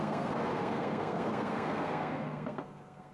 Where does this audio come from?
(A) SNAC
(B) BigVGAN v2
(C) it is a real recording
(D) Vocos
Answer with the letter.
A